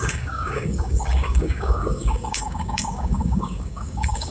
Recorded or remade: remade